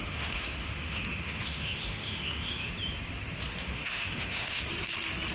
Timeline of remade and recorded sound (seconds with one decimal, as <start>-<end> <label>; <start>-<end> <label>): 0.0-2.7 remade; 2.7-3.6 recorded; 3.6-4.6 remade; 4.6-5.3 recorded